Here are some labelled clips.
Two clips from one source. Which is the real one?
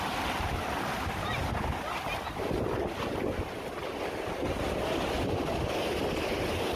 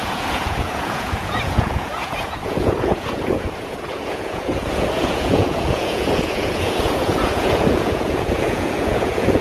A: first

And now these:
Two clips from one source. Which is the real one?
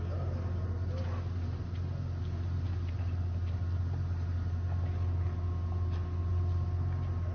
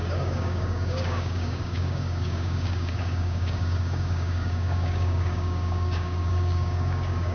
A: first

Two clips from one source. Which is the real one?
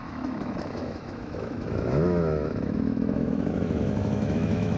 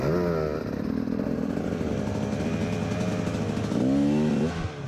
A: second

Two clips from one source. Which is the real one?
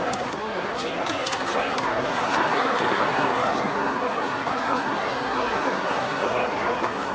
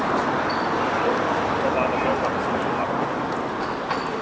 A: second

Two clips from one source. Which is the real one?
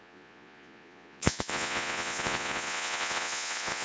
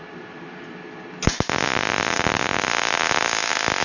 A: second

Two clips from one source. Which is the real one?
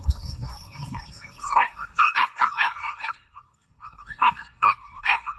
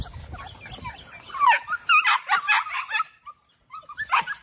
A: second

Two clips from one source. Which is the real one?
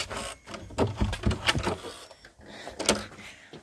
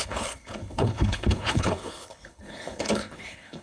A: first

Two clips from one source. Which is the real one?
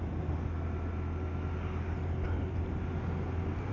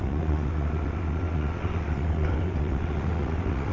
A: first